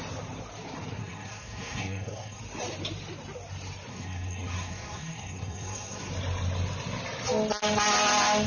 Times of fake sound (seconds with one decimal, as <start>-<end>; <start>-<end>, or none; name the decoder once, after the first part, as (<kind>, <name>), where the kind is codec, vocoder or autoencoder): 1.0-2.4 (codec, SNAC); 3.9-6.1